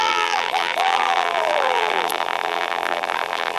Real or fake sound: fake